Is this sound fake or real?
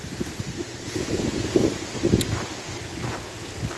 real